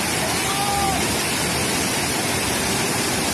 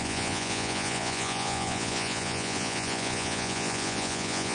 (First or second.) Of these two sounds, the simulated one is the second